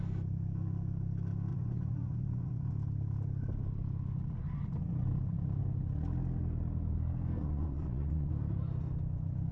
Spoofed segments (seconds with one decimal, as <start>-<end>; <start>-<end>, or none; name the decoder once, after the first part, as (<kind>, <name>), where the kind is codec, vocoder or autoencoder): 1.5-2.7 (vocoder, Vocos); 7.4-8.3